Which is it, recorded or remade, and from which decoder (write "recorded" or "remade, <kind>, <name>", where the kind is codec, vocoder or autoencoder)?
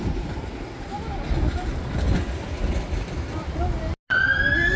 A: recorded